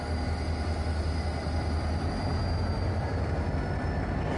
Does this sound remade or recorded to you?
recorded